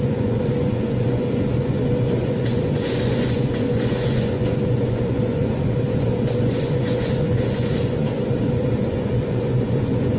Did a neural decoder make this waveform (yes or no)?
yes